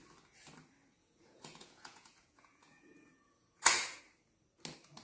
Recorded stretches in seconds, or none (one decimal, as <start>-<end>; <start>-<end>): 0.0-1.0; 4.0-5.0